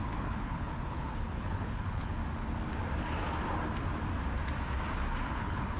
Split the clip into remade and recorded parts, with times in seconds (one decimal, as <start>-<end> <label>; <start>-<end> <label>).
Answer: 0.0-2.2 remade; 2.2-5.3 recorded; 5.3-5.8 remade